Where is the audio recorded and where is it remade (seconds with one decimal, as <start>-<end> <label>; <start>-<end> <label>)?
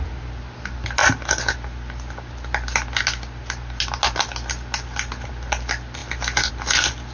0.0-7.1 recorded